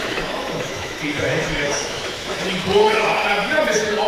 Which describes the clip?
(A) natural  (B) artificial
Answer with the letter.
B